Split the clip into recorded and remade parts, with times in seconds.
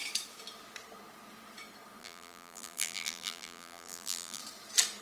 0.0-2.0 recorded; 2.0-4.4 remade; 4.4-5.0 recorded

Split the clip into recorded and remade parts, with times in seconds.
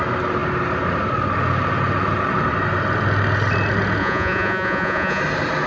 0.0-4.0 recorded; 4.0-5.2 remade; 5.2-5.7 recorded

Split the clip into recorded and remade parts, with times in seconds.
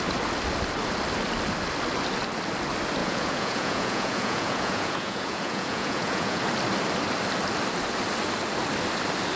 0.0-3.0 recorded; 3.0-6.4 remade; 6.4-9.4 recorded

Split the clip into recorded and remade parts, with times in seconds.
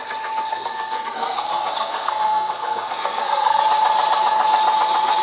0.0-0.5 recorded; 0.5-3.6 remade; 3.6-5.2 recorded